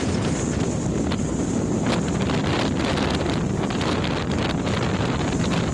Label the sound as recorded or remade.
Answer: recorded